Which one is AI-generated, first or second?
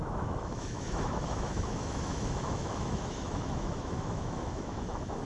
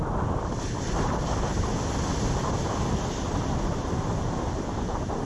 first